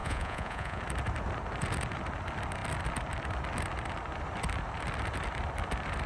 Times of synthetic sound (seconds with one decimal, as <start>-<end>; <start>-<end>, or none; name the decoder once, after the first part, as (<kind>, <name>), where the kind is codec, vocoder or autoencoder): 0.0-0.8 (vocoder, Vocos)